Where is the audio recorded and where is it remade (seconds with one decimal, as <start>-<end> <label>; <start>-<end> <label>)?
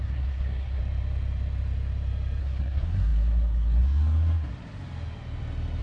0.0-0.8 remade; 0.8-2.4 recorded; 2.4-4.5 remade; 4.5-5.8 recorded